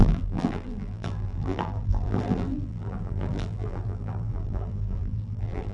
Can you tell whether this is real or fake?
fake